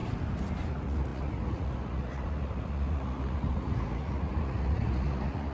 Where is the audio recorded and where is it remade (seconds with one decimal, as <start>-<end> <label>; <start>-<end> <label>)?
0.0-0.7 recorded; 0.7-5.5 remade